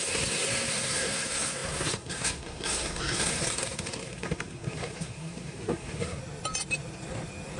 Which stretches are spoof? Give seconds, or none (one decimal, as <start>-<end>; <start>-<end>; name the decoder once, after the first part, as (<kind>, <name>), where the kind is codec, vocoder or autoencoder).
0.0-6.2 (codec, SNAC)